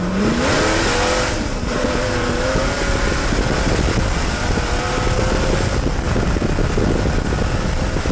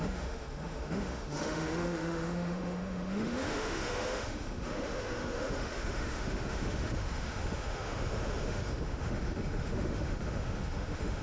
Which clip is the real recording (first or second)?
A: first